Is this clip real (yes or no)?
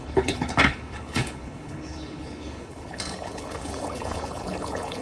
no